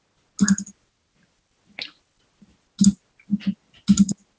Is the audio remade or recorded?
recorded